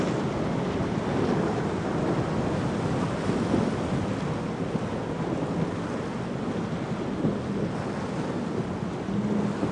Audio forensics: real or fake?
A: real